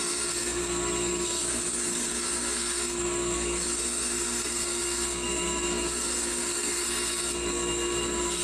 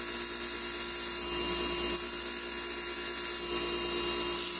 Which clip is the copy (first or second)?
first